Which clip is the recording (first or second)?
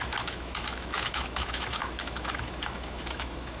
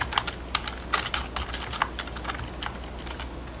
second